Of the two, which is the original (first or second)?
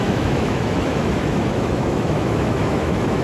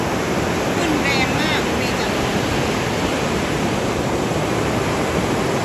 second